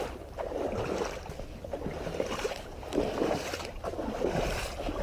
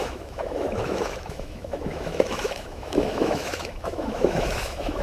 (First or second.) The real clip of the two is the first